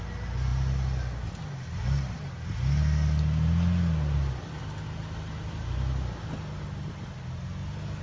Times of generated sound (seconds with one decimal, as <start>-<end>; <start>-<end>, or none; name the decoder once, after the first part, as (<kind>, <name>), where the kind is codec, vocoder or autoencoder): none

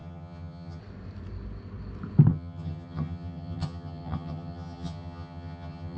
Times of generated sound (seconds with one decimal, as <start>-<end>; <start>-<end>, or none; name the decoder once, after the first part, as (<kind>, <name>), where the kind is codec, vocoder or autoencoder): 0.0-0.8 (vocoder, HiFi-GAN); 2.3-6.0

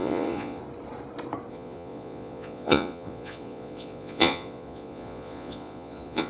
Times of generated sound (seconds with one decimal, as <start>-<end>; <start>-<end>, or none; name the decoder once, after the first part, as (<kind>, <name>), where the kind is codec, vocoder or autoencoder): 0.0-0.6 (vocoder, Vocos); 1.5-6.3

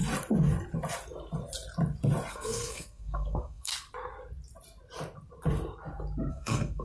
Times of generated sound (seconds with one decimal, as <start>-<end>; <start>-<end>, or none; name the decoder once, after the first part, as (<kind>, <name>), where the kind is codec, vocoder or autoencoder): 2.3-3.7 (codec, SNAC); 6.3-6.8

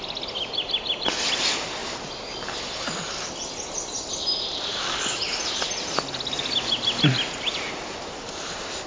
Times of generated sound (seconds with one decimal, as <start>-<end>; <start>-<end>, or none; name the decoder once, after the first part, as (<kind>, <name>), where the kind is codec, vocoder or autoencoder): 4.7-5.2 (codec, DAC)

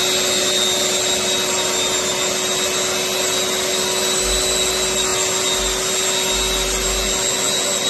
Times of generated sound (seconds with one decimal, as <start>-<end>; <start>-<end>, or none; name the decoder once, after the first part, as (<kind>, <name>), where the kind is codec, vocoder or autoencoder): none

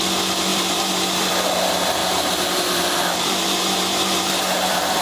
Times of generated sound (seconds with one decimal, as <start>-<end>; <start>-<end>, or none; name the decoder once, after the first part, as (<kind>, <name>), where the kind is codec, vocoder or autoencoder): 0.5-1.3 (vocoder, BigVGAN v2); 2.0-5.0

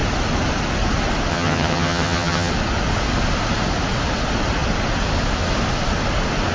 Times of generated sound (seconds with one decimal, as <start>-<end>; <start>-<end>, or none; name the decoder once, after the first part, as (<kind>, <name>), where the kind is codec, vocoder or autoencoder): 1.3-2.5 (vocoder, HiFi-GAN)